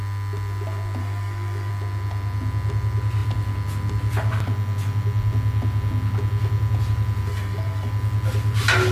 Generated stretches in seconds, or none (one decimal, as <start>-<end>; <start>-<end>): 1.0-1.7; 7.3-7.9